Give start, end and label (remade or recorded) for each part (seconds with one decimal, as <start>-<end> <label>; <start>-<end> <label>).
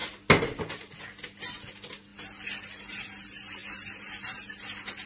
0.0-5.1 recorded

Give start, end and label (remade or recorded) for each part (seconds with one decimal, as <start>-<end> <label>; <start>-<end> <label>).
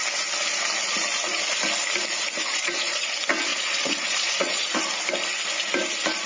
0.0-2.5 recorded; 2.5-3.1 remade; 3.1-3.5 recorded; 3.5-4.7 remade; 4.7-6.3 recorded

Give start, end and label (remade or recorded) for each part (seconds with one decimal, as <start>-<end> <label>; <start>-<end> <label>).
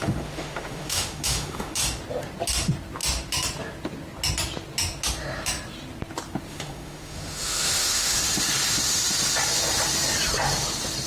0.0-1.8 remade; 1.8-6.5 recorded; 6.5-8.2 remade; 8.2-11.1 recorded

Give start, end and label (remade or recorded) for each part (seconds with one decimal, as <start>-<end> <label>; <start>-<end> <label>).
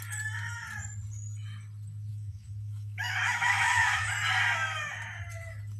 0.0-2.1 recorded; 2.1-4.1 remade; 4.1-5.8 recorded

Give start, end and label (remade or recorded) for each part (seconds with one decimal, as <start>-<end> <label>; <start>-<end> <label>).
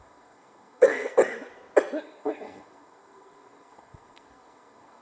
0.0-1.2 remade; 1.2-2.0 recorded; 2.0-5.0 remade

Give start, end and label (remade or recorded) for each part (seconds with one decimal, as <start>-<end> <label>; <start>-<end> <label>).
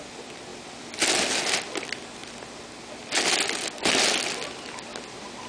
0.0-5.5 recorded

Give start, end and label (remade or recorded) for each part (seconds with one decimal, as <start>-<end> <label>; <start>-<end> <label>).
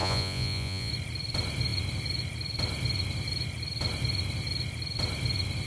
0.0-0.9 remade; 0.9-5.7 recorded